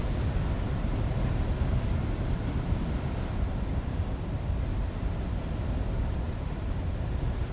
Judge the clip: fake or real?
real